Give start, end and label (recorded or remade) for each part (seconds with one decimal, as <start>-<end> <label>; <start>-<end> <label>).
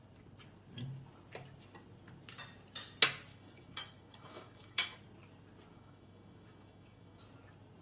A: 0.0-3.3 recorded; 3.3-5.0 remade; 5.0-5.7 recorded; 5.7-7.2 remade; 7.2-7.8 recorded